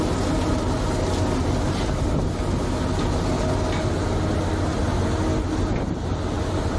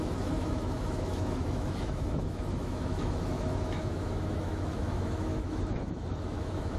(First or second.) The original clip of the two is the first